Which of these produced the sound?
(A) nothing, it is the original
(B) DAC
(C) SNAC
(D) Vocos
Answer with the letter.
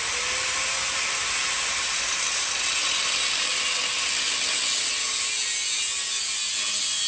A